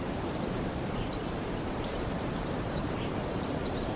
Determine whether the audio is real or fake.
fake